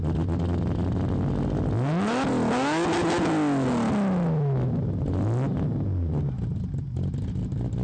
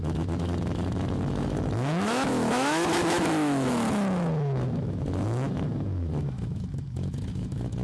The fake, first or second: second